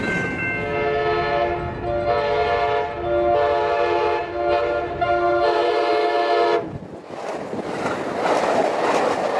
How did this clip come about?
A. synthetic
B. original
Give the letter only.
B